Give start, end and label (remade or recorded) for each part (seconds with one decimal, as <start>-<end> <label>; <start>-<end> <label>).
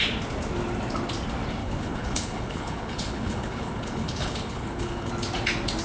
0.0-1.6 recorded; 1.6-5.1 remade; 5.1-5.8 recorded